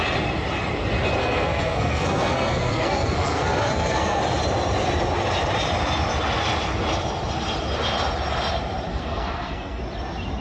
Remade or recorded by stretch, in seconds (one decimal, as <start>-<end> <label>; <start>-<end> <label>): 0.0-1.2 recorded; 1.2-4.2 remade; 4.2-8.9 recorded; 8.9-9.8 remade; 9.8-10.4 recorded